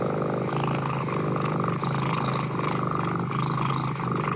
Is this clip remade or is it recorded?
recorded